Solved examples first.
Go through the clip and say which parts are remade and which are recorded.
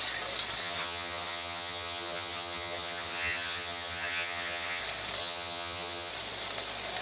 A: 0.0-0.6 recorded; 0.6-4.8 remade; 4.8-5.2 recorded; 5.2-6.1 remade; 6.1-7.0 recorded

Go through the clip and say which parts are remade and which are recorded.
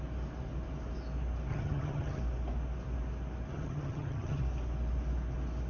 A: 0.0-1.5 recorded; 1.5-2.2 remade; 2.2-3.5 recorded; 3.5-4.4 remade; 4.4-5.7 recorded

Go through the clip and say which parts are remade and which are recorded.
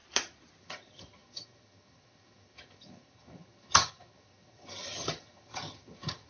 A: 0.0-0.6 recorded; 0.6-6.3 remade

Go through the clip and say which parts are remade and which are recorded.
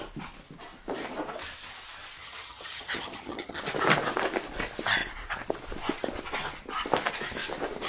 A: 0.0-2.2 recorded; 2.2-3.6 remade; 3.6-7.9 recorded